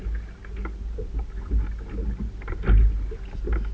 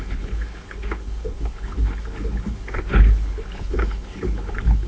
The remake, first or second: second